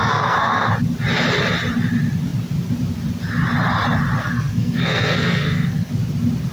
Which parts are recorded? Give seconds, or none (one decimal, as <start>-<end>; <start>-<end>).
0.7-4.2; 5.9-6.5